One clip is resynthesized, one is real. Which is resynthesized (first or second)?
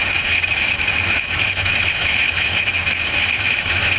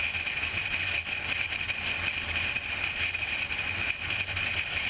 first